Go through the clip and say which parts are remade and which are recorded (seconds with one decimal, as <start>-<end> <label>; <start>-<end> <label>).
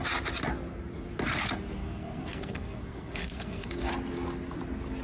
0.0-1.8 recorded; 1.8-3.9 remade; 3.9-5.0 recorded